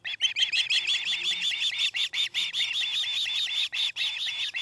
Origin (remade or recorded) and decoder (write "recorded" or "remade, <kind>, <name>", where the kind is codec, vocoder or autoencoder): recorded